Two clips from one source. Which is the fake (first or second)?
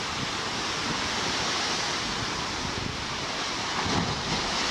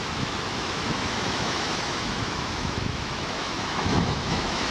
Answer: second